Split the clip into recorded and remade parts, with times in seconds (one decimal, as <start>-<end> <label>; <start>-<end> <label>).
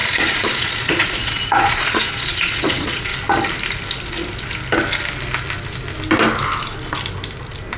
0.0-3.1 remade; 3.1-7.8 recorded